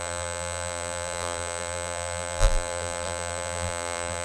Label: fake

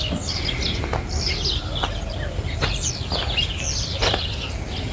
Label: real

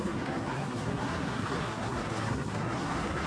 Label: fake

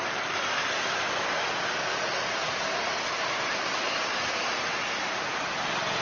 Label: real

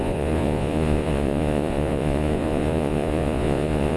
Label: fake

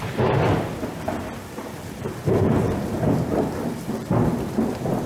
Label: fake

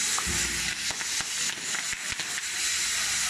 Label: real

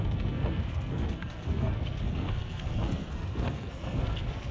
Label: fake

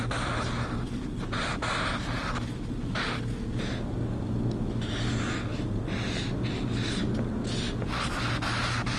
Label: real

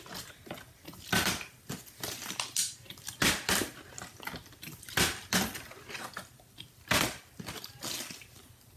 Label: real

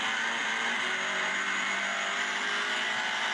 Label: real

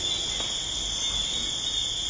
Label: real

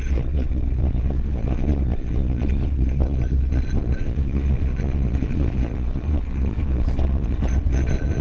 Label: fake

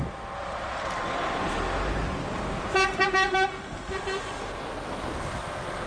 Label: real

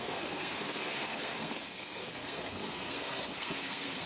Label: fake